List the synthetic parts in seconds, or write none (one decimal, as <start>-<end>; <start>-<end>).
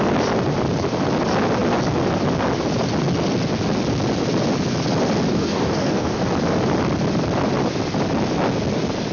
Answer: 5.3-6.2